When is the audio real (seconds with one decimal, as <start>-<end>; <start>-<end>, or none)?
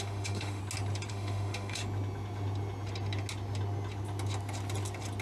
0.6-1.1; 1.8-5.2